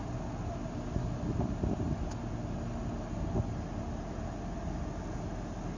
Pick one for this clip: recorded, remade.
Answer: recorded